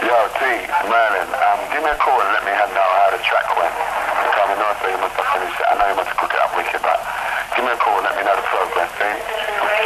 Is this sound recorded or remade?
recorded